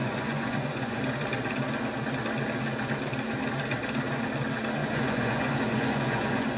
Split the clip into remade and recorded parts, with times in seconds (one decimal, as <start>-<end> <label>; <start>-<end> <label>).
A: 0.0-1.0 remade; 1.0-4.8 recorded; 4.8-6.6 remade